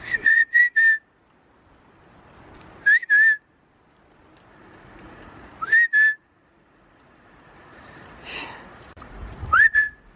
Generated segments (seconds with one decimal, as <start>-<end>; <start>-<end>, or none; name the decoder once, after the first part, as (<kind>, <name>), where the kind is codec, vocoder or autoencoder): 0.0-0.6 (vocoder, Vocos); 4.5-5.5; 6.2-10.2